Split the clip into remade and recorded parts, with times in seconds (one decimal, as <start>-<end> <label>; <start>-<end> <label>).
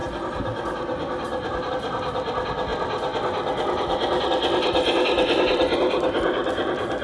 0.0-7.0 recorded